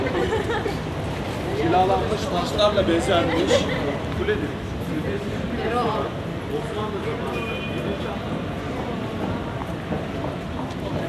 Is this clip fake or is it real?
real